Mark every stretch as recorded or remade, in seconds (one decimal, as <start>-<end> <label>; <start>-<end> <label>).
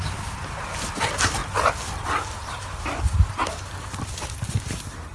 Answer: 0.0-5.1 recorded